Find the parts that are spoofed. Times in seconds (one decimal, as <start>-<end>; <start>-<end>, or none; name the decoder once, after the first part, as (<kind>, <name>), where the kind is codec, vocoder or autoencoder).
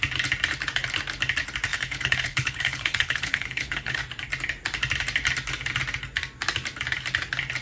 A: 1.7-4.0 (codec, HILCodec)